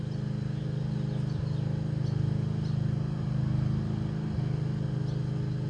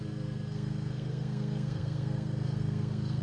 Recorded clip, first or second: first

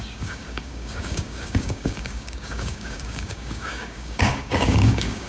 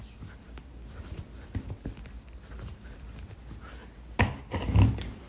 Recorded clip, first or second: second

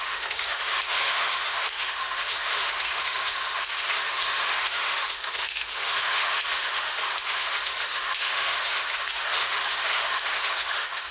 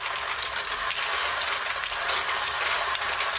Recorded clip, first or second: second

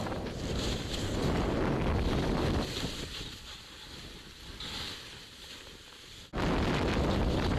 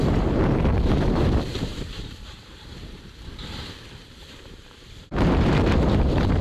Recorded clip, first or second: first